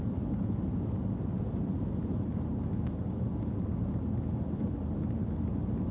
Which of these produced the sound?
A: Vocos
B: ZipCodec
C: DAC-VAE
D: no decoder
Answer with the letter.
D